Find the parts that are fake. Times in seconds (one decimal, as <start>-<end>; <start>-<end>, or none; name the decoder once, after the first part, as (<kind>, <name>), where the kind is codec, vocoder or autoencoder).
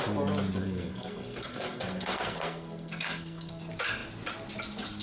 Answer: 0.6-3.6 (codec, SNAC)